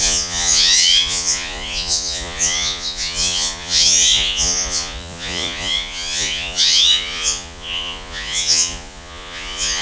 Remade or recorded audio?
remade